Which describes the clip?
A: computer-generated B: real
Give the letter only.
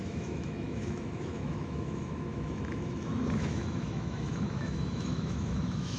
A